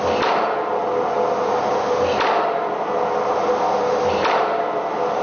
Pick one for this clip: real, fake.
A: real